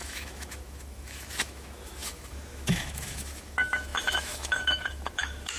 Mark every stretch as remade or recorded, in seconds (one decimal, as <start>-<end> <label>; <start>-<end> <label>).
0.0-5.6 remade